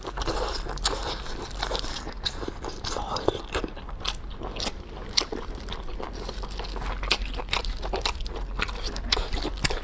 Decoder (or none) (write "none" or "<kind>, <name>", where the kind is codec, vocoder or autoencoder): none